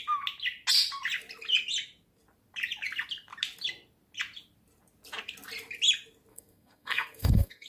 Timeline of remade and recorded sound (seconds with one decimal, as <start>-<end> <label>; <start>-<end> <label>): 0.0-6.3 recorded; 6.3-7.7 remade